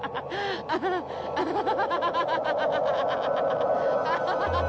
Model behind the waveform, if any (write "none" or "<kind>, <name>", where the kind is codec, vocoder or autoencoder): none